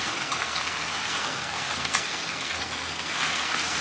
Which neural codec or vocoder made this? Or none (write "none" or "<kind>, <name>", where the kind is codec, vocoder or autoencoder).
codec, SNAC